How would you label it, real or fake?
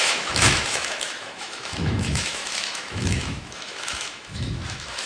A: fake